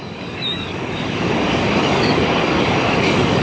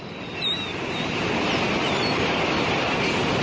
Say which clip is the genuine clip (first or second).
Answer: second